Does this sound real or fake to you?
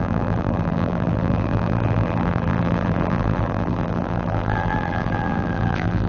fake